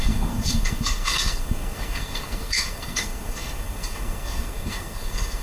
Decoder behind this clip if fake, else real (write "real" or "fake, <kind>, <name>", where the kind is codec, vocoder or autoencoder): fake, codec, SNAC